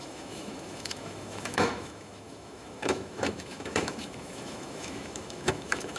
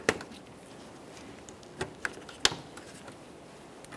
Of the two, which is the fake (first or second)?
first